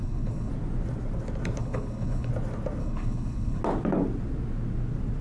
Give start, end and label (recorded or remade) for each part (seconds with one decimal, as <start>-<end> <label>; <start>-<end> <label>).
0.0-0.5 remade; 0.5-1.6 recorded; 1.6-2.3 remade; 2.3-2.8 recorded; 2.8-3.6 remade; 3.6-5.2 recorded

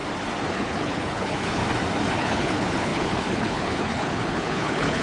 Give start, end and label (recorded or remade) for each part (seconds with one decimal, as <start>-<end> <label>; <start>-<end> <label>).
0.0-0.5 recorded; 0.5-1.6 remade; 1.6-2.1 recorded; 2.1-5.0 remade

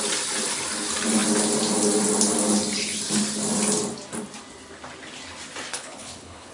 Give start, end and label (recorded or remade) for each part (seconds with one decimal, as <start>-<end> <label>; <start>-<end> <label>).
0.0-5.7 recorded; 5.7-6.5 remade

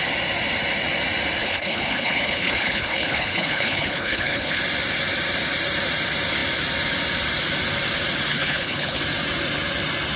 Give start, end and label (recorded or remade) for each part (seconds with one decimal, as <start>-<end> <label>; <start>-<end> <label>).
0.0-1.4 recorded; 1.4-4.6 remade; 4.6-8.3 recorded; 8.3-9.0 remade; 9.0-10.2 recorded

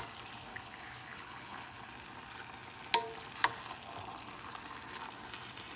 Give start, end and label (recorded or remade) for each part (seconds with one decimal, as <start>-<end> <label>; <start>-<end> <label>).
0.0-0.5 recorded; 0.5-1.9 remade; 1.9-5.8 recorded

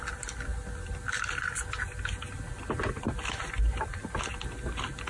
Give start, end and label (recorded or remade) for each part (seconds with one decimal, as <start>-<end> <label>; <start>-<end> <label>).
0.0-5.1 recorded

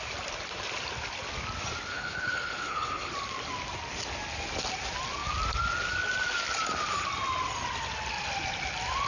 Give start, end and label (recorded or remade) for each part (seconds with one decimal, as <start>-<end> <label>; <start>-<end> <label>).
0.0-1.9 recorded; 1.9-3.1 remade; 3.1-9.1 recorded